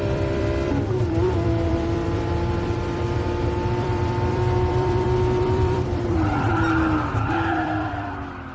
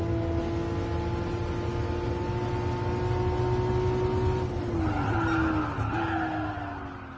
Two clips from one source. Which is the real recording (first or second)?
second